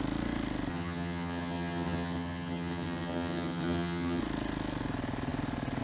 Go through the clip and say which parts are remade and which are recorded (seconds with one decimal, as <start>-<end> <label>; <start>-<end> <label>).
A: 0.0-0.7 recorded; 0.7-4.2 remade; 4.2-5.8 recorded